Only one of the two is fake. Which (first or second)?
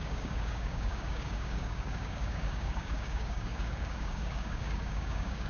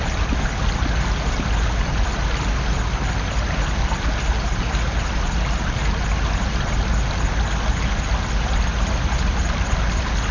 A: first